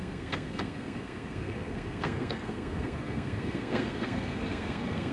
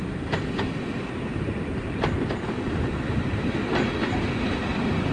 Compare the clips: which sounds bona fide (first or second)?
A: second